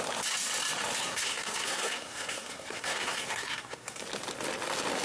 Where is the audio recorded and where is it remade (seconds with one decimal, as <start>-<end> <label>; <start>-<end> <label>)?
0.0-1.0 recorded; 1.0-4.0 remade; 4.0-5.0 recorded